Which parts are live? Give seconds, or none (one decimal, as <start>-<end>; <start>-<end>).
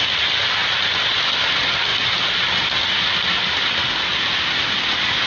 0.0-5.3